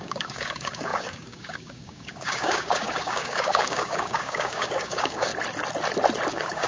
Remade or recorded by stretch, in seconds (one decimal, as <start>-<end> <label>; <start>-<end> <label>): 0.0-5.3 remade; 5.3-6.3 recorded; 6.3-6.7 remade